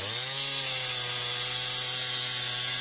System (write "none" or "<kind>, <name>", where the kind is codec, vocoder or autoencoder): none